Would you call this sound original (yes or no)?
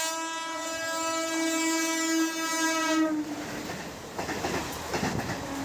yes